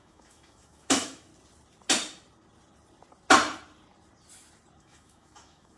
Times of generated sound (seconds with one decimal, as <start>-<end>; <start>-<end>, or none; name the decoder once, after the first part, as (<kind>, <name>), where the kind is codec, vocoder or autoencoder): 0.0-1.3 (autoencoder, DAC-VAE); 4.8-5.8